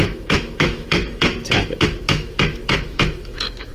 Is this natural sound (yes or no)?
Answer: no